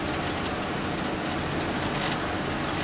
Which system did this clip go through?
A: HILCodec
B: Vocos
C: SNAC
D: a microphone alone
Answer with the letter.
D